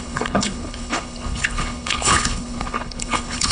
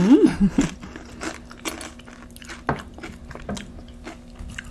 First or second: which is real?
second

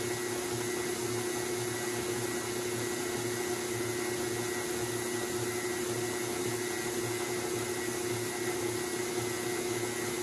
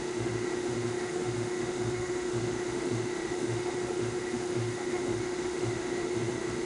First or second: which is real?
first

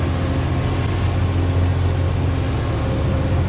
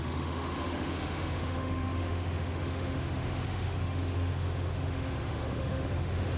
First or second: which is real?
first